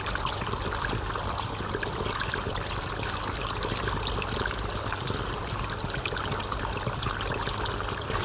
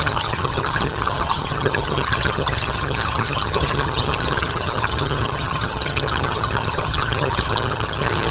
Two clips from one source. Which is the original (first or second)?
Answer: first